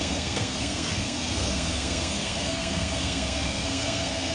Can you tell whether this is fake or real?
fake